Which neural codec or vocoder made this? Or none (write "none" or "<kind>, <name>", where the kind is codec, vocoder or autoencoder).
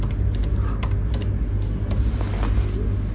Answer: none